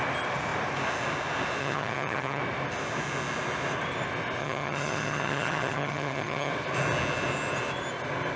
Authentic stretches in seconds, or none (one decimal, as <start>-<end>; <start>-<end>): 0.0-1.6; 2.4-4.4; 6.5-8.4